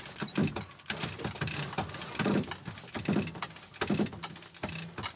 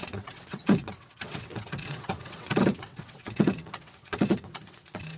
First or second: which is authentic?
first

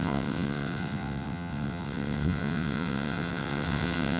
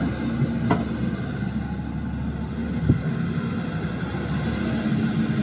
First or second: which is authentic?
second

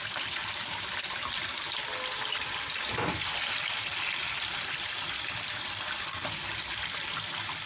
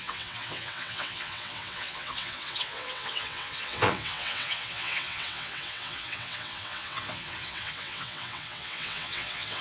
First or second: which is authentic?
first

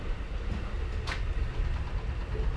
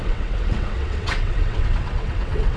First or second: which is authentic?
first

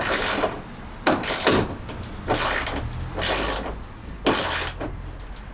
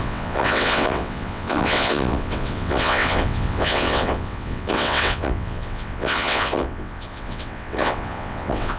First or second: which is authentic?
first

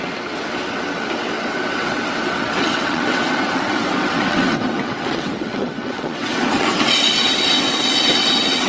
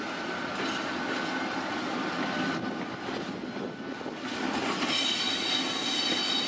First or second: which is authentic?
second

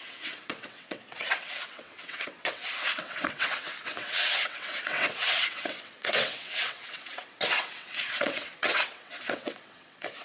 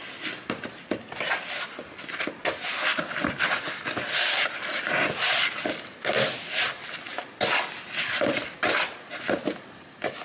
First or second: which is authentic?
second